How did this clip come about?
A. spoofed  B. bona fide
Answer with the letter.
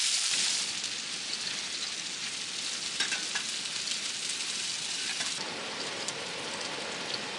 B